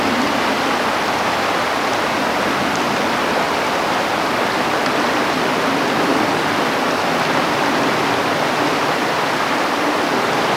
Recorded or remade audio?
recorded